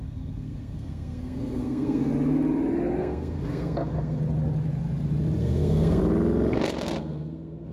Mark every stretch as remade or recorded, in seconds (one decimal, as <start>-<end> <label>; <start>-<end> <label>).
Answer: 0.0-2.1 remade; 2.1-3.0 recorded; 3.0-4.2 remade; 4.2-5.4 recorded; 5.4-6.0 remade; 6.0-6.5 recorded; 6.5-7.7 remade